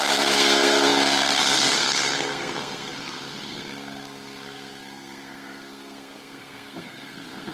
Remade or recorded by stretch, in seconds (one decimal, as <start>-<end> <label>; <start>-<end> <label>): 0.0-7.5 remade